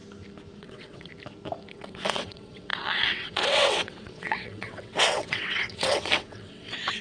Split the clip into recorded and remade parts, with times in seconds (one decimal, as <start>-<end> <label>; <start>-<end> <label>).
0.0-0.6 recorded; 0.6-1.1 remade; 1.1-1.7 recorded; 1.7-7.0 remade